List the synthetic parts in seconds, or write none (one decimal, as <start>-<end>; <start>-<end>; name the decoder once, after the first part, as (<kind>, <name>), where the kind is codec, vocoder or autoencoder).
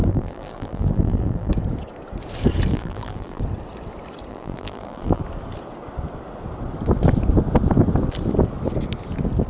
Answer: 0.0-1.5 (vocoder, BigVGAN v2); 2.7-3.4; 4.3-5.2